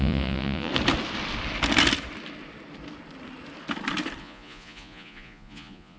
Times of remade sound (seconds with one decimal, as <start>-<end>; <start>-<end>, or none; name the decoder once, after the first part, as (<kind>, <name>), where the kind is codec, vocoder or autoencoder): 0.0-0.7 (vocoder, Vocos); 4.2-6.0